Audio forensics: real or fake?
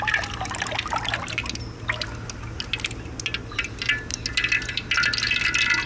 real